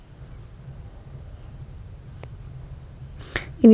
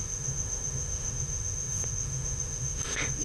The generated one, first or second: second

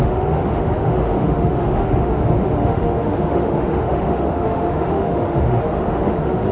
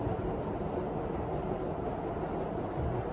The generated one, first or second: first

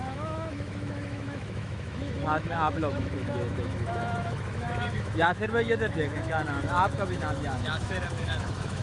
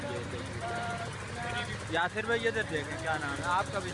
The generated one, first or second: first